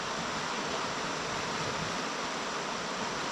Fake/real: real